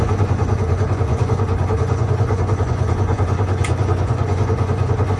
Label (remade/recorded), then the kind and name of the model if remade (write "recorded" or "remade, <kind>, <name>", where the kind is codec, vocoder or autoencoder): remade, vocoder, Vocos